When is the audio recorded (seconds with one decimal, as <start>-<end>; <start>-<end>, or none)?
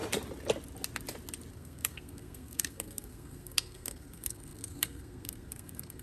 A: 0.0-1.5